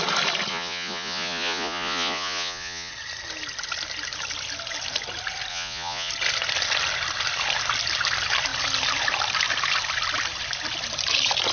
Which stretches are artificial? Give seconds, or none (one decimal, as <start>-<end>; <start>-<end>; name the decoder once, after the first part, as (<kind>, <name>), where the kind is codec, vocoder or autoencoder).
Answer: 0.5-2.9 (vocoder, Vocos); 5.5-6.1